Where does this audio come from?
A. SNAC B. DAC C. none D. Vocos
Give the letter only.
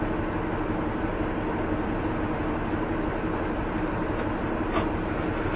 C